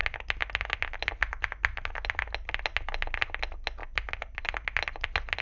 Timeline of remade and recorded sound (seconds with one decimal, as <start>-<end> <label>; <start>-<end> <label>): 0.0-5.4 recorded